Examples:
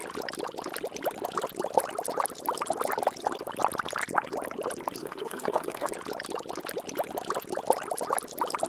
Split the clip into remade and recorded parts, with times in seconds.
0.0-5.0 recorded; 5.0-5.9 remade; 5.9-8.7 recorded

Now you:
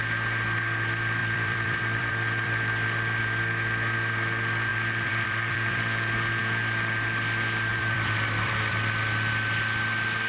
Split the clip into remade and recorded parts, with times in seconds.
0.0-1.2 recorded; 1.2-3.2 remade; 3.2-4.7 recorded; 4.7-6.4 remade; 6.4-7.7 recorded; 7.7-9.3 remade; 9.3-10.3 recorded

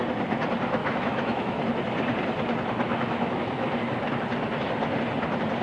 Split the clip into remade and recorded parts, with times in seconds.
0.0-0.8 recorded; 0.8-1.6 remade; 1.6-2.9 recorded; 2.9-3.7 remade; 3.7-5.6 recorded